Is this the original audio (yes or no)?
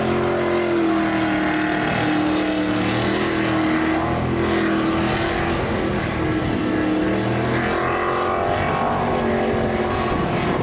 yes